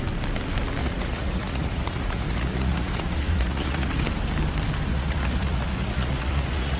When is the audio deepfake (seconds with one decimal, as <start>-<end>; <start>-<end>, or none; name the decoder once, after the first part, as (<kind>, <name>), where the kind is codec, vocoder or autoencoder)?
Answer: 0.8-4.0 (vocoder, Vocos); 4.9-6.8